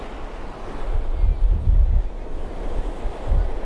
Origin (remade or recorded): recorded